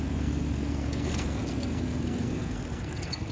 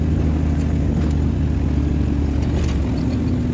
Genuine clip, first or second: second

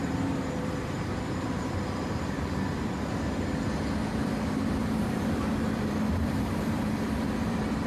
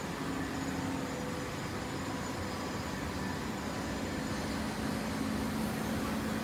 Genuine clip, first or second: second